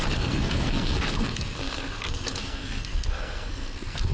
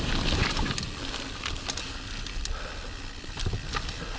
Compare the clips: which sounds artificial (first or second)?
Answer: first